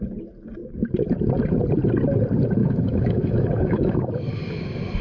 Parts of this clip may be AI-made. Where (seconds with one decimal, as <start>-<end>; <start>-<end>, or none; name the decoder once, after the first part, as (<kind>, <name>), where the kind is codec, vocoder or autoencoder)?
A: 2.6-4.1 (autoencoder, DAC-VAE)